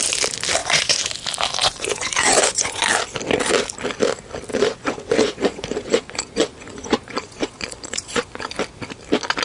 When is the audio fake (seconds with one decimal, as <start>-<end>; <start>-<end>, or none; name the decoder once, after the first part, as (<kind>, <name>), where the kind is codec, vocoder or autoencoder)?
0.6-1.1 (vocoder, Vocos); 1.6-2.8; 4.5-8.5